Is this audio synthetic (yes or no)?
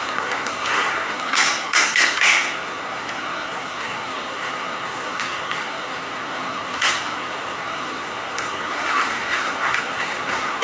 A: yes